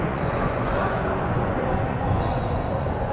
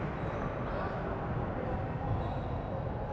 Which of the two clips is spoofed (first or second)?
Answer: first